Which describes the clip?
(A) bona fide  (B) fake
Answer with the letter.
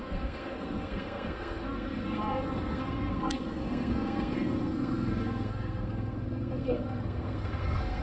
B